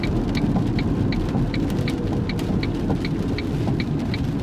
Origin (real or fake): real